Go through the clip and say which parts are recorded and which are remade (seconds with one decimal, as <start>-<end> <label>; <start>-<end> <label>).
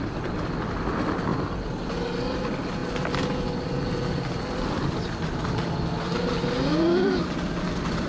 0.0-8.1 recorded